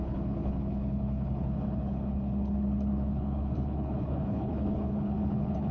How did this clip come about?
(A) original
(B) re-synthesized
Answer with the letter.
B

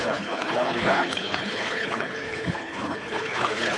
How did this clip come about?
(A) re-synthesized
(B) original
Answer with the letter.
A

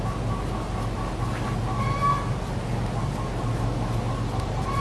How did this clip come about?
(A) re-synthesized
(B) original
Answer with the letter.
B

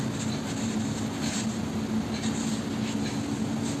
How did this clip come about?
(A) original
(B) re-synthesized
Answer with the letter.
A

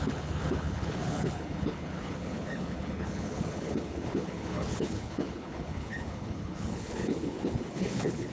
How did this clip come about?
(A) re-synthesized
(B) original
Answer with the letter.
A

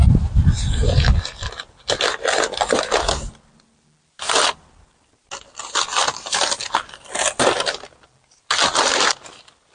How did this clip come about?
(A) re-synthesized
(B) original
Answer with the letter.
B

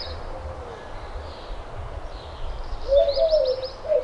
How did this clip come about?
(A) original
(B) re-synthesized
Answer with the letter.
A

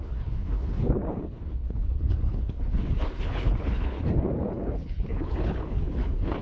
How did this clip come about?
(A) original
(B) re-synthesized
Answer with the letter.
B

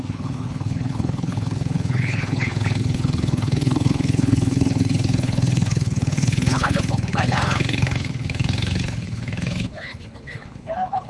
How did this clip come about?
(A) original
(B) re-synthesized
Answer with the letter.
B